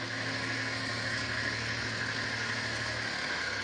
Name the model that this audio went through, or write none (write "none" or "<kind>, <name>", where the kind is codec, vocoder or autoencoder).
codec, SNAC